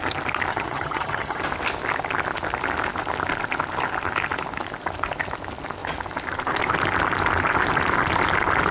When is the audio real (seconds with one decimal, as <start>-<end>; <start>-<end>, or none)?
0.0-0.5; 1.4-8.7